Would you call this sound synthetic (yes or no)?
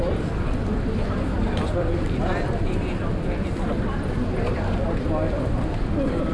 yes